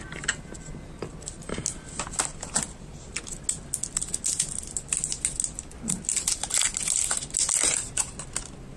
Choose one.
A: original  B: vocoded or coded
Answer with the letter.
A